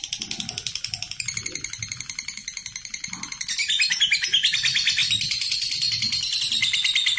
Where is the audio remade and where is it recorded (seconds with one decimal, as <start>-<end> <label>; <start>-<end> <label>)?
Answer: 0.0-2.4 remade; 2.4-4.5 recorded; 4.5-7.2 remade